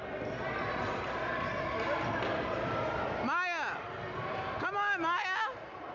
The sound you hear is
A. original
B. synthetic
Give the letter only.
A